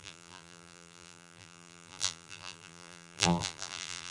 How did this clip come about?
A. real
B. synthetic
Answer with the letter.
B